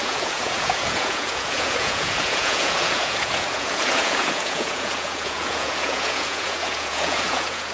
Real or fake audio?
fake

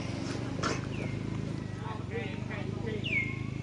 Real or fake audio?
real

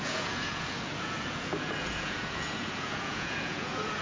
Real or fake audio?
fake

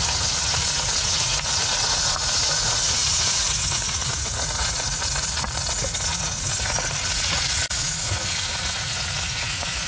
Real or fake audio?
fake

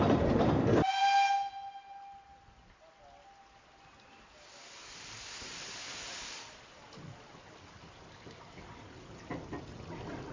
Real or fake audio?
real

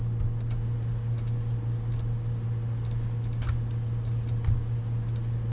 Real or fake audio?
real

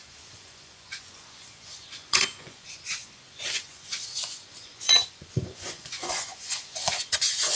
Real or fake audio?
fake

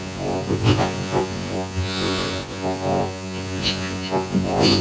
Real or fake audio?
fake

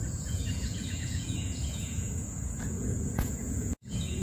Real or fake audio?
fake